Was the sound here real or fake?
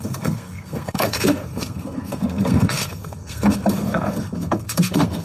fake